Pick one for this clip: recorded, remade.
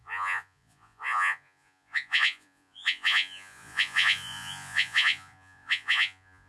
remade